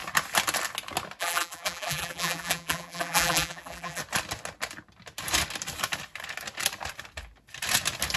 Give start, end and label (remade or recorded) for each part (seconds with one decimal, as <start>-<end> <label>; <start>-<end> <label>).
0.0-1.2 recorded; 1.2-4.0 remade; 4.0-8.2 recorded